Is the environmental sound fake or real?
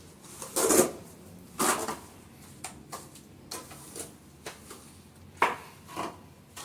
real